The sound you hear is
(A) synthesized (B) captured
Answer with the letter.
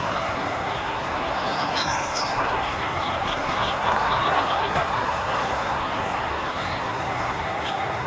A